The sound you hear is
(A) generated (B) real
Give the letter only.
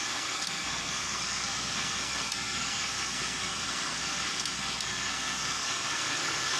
A